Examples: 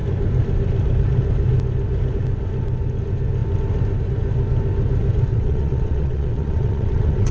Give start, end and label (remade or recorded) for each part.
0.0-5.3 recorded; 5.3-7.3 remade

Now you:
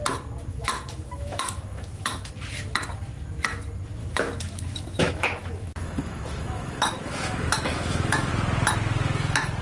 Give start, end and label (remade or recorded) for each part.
0.0-0.5 recorded; 0.5-2.3 remade; 2.3-4.0 recorded; 4.0-8.3 remade; 8.3-9.6 recorded

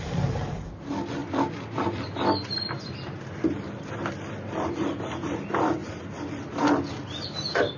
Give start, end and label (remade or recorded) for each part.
0.0-7.8 recorded

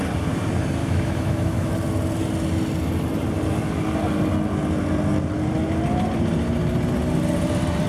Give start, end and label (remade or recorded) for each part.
0.0-0.8 recorded; 0.8-1.7 remade; 1.7-7.9 recorded

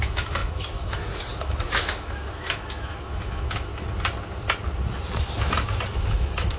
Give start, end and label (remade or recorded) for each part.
0.0-3.7 remade; 3.7-5.9 recorded; 5.9-6.6 remade

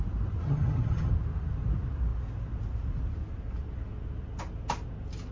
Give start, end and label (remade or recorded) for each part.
0.0-0.4 recorded; 0.4-1.1 remade; 1.1-5.3 recorded

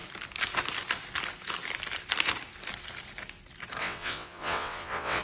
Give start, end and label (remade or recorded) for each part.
0.0-3.8 recorded; 3.8-5.2 remade

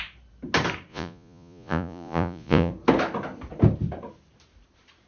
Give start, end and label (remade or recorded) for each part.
0.0-0.9 recorded; 0.9-2.7 remade; 2.7-5.1 recorded